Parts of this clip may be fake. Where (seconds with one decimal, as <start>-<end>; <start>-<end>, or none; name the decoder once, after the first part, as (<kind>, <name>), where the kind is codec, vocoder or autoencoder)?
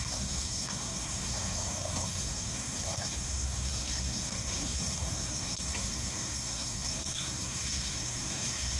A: 0.0-8.8 (codec, SNAC)